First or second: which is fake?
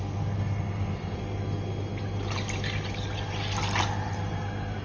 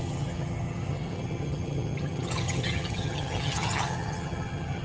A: second